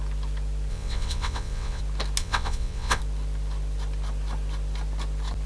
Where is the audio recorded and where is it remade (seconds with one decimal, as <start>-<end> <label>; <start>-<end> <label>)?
0.0-0.7 recorded; 0.7-1.8 remade; 1.8-2.2 recorded; 2.2-3.0 remade; 3.0-5.5 recorded